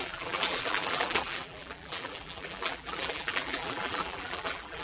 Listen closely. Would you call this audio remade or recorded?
remade